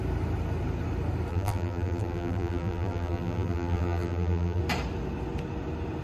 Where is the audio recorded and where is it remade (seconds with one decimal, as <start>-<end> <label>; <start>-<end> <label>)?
0.0-1.3 recorded; 1.3-4.6 remade; 4.6-6.0 recorded

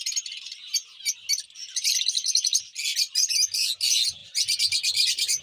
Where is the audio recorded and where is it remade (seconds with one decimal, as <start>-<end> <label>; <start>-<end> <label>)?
0.0-5.4 recorded

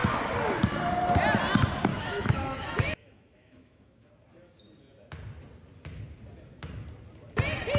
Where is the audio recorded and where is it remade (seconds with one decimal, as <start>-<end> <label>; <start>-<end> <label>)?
0.0-1.9 recorded; 1.9-4.1 remade; 4.1-7.8 recorded

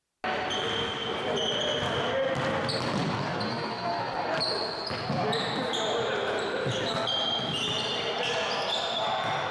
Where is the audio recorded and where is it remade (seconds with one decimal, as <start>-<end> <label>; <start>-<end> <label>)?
0.0-9.5 recorded

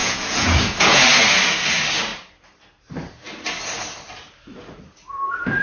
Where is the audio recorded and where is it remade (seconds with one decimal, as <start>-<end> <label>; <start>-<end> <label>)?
0.0-1.0 remade; 1.0-5.6 recorded

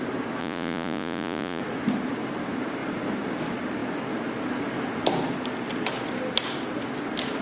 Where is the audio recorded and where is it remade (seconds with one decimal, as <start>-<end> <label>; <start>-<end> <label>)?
0.0-0.4 recorded; 0.4-1.6 remade; 1.6-7.4 recorded

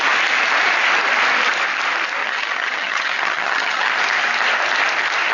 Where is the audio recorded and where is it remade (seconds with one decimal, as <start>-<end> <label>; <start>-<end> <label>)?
0.0-2.2 recorded; 2.2-3.9 remade; 3.9-5.3 recorded

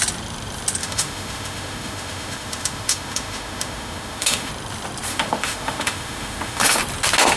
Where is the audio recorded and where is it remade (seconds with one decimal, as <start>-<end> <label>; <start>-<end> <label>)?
0.0-0.8 recorded; 0.8-4.5 remade; 4.5-5.1 recorded; 5.1-6.8 remade; 6.8-7.4 recorded